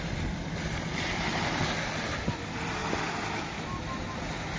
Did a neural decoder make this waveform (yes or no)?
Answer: no